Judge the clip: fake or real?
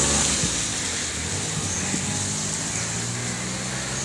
real